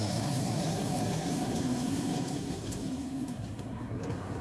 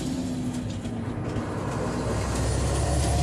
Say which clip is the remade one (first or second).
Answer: first